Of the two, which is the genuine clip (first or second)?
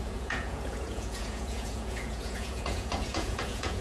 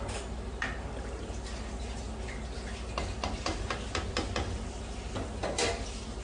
second